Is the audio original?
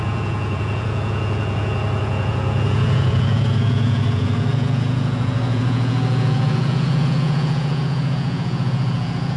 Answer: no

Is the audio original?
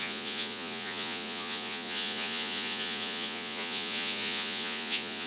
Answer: no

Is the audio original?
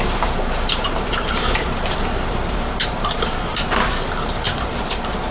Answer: no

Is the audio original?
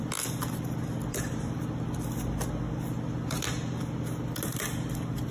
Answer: yes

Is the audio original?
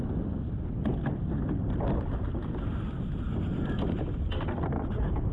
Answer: yes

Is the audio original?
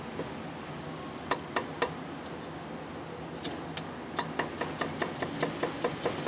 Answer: yes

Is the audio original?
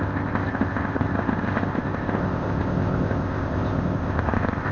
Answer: no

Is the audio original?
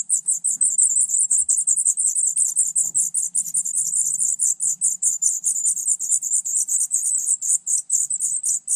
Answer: yes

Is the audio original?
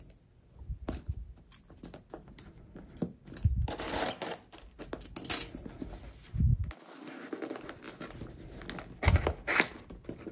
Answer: yes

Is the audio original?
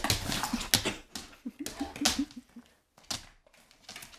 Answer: yes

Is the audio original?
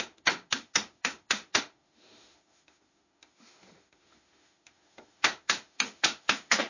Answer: no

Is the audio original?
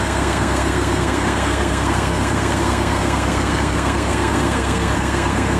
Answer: no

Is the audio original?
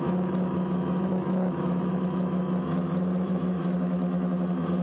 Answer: no